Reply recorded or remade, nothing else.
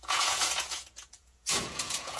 remade